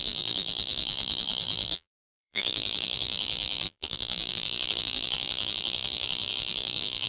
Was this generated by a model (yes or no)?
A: yes